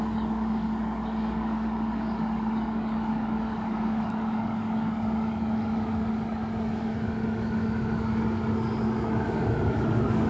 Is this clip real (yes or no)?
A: no